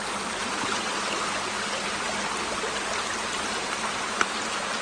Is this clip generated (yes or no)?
no